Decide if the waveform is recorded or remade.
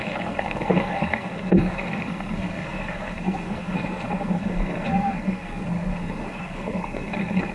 remade